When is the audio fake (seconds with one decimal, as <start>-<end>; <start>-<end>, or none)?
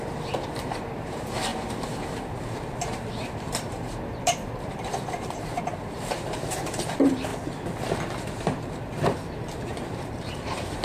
0.0-7.3; 8.2-10.8